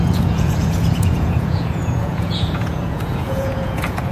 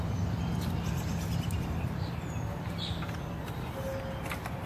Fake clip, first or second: first